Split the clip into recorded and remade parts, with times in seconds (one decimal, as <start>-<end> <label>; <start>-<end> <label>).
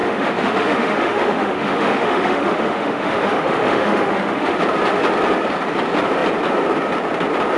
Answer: 0.0-4.6 remade; 4.6-7.6 recorded